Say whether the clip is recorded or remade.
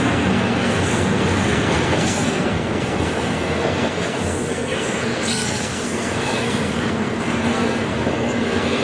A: remade